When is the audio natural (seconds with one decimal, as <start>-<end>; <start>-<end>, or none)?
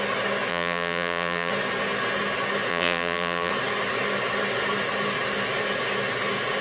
0.0-0.5; 1.5-2.7; 3.5-6.6